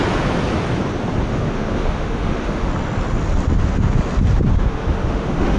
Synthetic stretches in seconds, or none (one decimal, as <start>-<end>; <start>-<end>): 1.3-2.7; 4.5-5.6